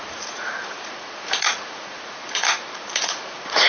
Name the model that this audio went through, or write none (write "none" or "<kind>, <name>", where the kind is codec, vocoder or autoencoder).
vocoder, Vocos